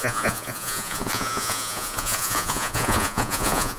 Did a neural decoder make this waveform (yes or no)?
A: yes